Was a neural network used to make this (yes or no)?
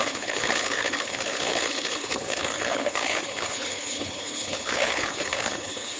yes